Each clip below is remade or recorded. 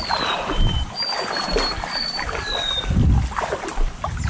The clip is recorded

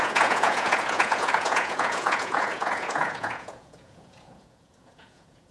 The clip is remade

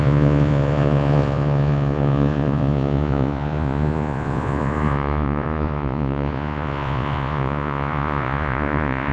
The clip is remade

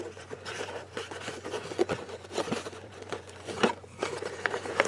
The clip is remade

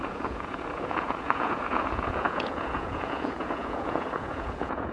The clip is remade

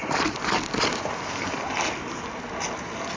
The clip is recorded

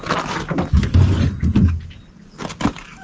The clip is recorded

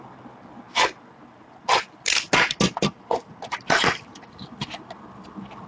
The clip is recorded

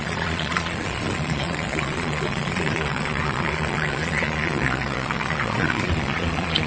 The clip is remade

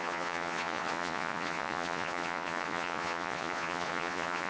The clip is remade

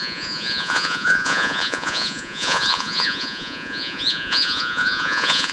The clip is remade